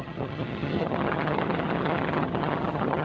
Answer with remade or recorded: remade